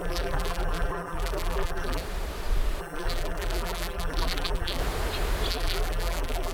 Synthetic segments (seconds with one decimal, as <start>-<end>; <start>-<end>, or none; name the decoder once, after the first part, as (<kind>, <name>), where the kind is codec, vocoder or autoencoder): 0.0-2.0 (vocoder, BigVGAN v2); 2.8-4.8; 5.5-6.5